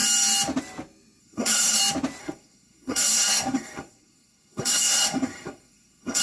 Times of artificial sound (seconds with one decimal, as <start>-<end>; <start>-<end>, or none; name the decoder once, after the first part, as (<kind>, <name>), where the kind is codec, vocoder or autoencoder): 1.2-1.8 (codec, SNAC); 2.2-6.2